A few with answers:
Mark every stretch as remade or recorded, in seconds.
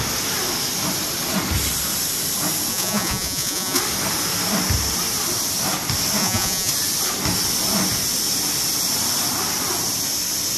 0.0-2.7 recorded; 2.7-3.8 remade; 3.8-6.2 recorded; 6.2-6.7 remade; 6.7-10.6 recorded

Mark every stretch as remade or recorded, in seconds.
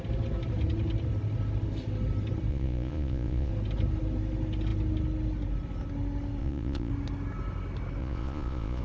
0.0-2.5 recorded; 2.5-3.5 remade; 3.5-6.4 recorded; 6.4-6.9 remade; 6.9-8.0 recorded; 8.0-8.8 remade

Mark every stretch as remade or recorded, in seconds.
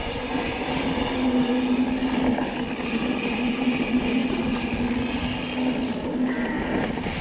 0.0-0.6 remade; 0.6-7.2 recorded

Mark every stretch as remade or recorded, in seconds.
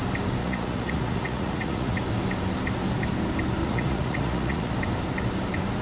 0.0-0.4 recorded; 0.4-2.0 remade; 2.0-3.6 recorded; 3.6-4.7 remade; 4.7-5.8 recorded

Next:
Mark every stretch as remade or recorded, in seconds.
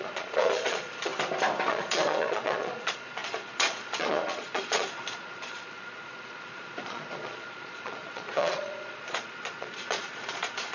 0.0-1.1 remade; 1.1-1.7 recorded; 1.7-10.7 remade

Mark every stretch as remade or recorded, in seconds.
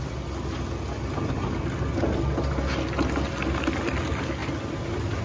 0.0-5.2 recorded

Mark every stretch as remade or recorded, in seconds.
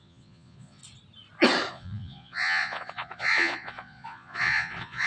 0.0-0.8 remade; 0.8-1.7 recorded; 1.7-5.1 remade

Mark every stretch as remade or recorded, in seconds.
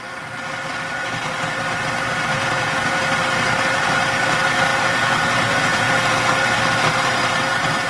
0.0-2.3 recorded; 2.3-3.0 remade; 3.0-4.7 recorded; 4.7-5.9 remade; 5.9-7.9 recorded